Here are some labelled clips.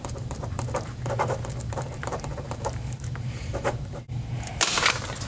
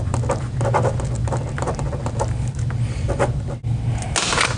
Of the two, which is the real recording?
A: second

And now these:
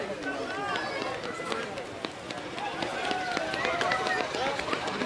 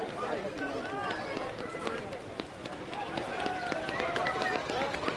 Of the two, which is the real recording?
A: first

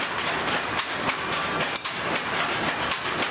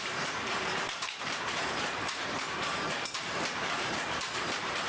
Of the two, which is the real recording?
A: first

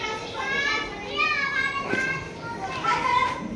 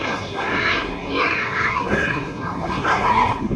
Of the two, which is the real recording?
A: first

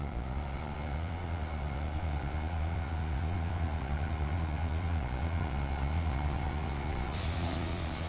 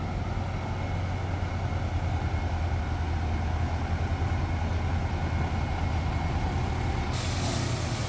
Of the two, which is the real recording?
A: second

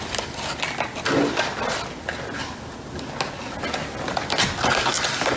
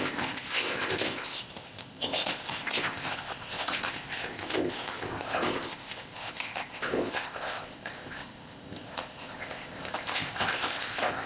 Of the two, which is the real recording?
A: first